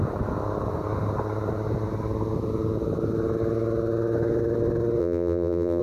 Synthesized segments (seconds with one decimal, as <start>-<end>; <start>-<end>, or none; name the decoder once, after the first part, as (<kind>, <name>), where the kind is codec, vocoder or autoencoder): 5.0-5.8 (vocoder, BigVGAN v2)